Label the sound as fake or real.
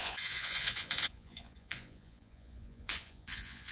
fake